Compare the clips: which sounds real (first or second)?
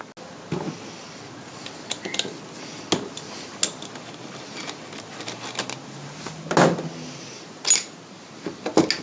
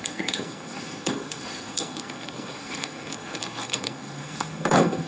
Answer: first